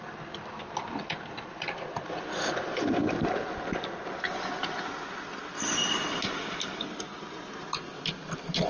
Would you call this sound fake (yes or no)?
no